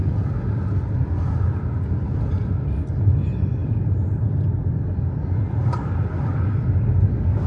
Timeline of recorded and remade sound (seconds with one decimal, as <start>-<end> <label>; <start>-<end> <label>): 0.0-7.5 recorded